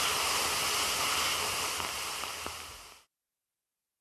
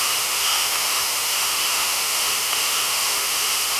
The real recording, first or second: first